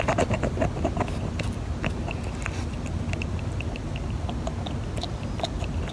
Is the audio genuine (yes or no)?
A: yes